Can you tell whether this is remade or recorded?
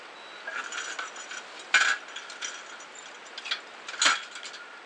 recorded